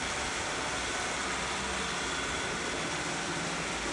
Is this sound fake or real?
fake